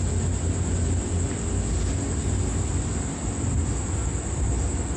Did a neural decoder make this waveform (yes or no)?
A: no